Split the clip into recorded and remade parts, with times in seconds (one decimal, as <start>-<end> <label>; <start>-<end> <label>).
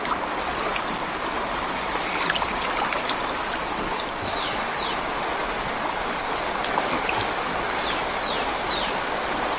0.0-9.6 recorded